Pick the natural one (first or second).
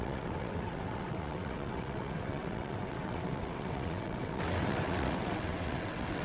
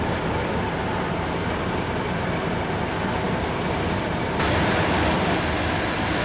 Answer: second